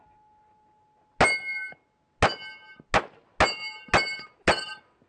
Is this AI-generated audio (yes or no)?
no